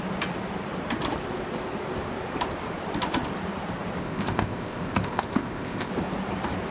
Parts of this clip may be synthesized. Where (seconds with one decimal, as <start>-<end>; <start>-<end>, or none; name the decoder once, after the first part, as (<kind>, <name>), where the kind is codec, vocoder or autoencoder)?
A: 4.0-5.9 (codec, ZipCodec)